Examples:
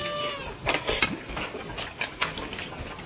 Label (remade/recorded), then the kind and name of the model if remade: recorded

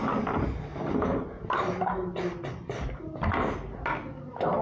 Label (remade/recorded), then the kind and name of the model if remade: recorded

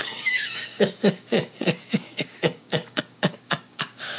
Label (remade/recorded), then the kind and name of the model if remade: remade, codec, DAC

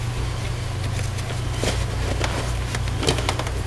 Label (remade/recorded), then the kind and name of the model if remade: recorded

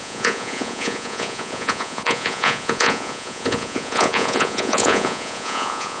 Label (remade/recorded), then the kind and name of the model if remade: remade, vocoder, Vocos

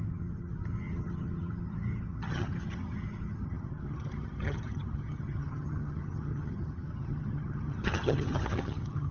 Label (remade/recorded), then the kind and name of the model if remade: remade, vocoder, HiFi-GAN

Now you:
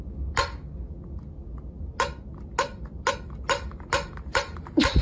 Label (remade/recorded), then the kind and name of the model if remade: recorded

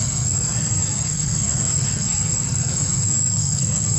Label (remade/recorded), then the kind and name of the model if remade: remade, codec, SNAC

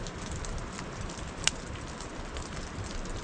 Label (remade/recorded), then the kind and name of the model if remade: recorded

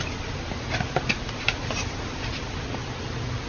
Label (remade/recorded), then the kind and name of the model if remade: recorded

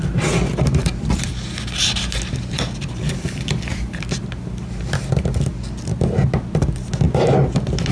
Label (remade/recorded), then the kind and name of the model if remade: recorded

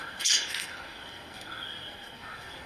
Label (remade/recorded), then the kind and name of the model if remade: remade, codec, SNAC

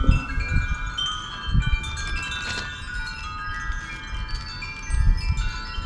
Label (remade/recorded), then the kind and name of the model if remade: recorded